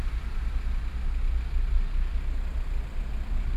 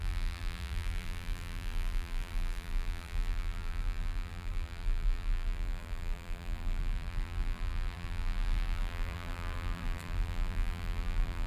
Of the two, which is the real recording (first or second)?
first